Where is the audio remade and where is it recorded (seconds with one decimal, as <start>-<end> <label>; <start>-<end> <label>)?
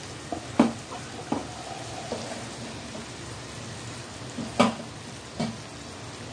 0.0-6.3 recorded